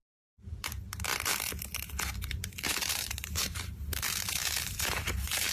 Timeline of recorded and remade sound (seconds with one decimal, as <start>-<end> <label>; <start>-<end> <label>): 0.0-1.1 remade; 1.1-2.2 recorded; 2.2-5.5 remade